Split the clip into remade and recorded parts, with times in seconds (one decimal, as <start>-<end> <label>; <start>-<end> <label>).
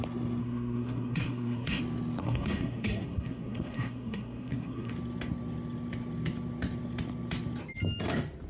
0.0-0.4 recorded; 0.4-1.8 remade; 1.8-2.2 recorded; 2.2-4.9 remade; 4.9-8.5 recorded